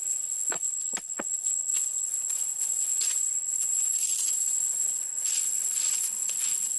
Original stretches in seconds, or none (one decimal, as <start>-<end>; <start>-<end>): 3.7-4.3